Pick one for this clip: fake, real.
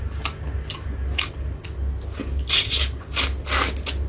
real